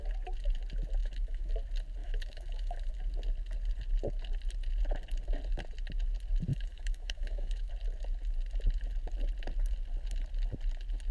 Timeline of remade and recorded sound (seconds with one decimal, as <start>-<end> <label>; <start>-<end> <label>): 0.0-1.0 recorded; 1.0-1.5 remade; 1.5-2.0 recorded; 2.0-2.9 remade; 2.9-6.5 recorded; 6.5-7.7 remade; 7.7-11.1 recorded